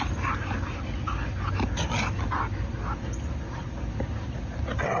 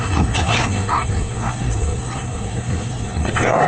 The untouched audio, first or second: first